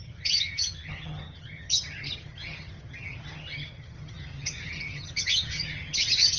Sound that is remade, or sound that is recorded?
remade